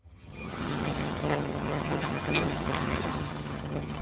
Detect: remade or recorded remade